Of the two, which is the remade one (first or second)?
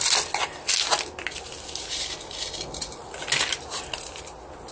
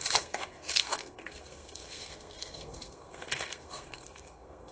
second